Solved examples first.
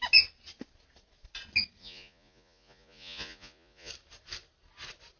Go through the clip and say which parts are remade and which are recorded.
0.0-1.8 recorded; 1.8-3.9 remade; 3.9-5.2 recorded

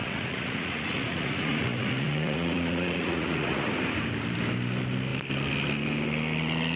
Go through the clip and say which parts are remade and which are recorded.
0.0-3.7 remade; 3.7-6.8 recorded

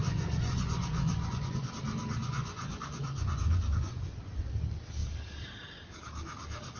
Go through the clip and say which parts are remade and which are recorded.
0.0-1.7 remade; 1.7-2.2 recorded; 2.2-4.5 remade; 4.5-6.8 recorded

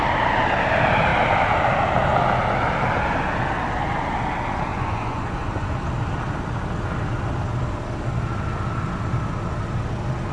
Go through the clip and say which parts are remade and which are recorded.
0.0-4.7 recorded; 4.7-5.7 remade; 5.7-10.3 recorded

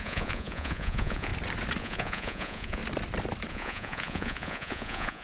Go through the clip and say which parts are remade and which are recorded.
0.0-1.3 remade; 1.3-1.8 recorded; 1.8-2.8 remade; 2.8-3.5 recorded; 3.5-5.2 remade

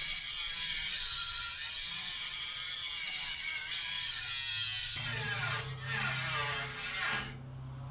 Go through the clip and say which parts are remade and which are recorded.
0.0-4.3 remade; 4.3-4.8 recorded; 4.8-5.6 remade; 5.6-7.9 recorded

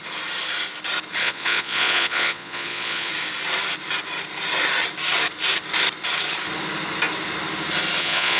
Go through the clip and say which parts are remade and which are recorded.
0.0-1.2 recorded; 1.2-3.1 remade; 3.1-8.0 recorded; 8.0-8.4 remade